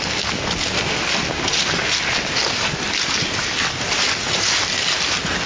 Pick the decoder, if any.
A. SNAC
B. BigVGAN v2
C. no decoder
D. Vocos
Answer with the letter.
C